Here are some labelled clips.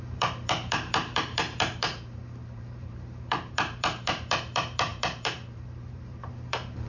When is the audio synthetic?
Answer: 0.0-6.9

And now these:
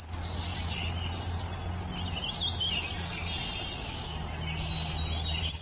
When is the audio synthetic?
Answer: none